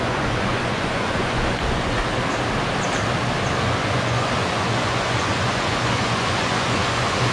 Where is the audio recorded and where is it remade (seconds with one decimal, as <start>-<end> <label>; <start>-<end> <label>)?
0.0-2.0 remade; 2.0-3.6 recorded; 3.6-7.3 remade